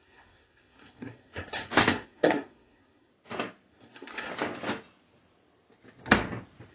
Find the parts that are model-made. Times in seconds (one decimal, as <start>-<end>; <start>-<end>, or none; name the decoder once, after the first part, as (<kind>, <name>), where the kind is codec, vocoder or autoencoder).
0.0-3.1 (codec, SNAC); 3.7-4.3